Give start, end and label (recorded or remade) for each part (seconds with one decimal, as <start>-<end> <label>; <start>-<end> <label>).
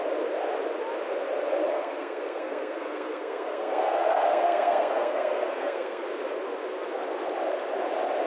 0.0-1.6 recorded; 1.6-6.0 remade; 6.0-8.3 recorded